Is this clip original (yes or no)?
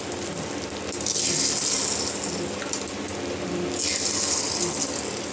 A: yes